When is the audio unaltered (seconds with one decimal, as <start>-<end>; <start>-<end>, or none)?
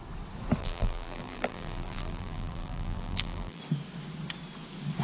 0.0-0.6; 3.6-5.0